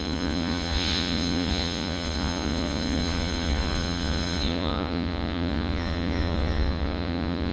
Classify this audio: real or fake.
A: fake